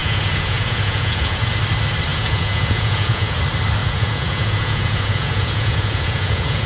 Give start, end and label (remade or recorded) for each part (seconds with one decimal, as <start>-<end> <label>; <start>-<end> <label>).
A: 0.0-1.6 remade; 1.6-2.1 recorded; 2.1-3.4 remade; 3.4-3.8 recorded; 3.8-6.7 remade